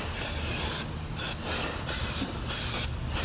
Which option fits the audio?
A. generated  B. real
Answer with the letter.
B